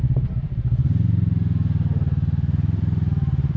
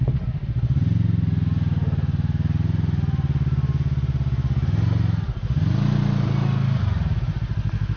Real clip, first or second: second